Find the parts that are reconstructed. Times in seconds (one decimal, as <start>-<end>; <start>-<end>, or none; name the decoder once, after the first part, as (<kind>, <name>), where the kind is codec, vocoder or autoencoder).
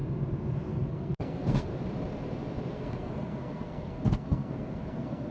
0.7-1.7 (codec, SNAC); 2.7-5.3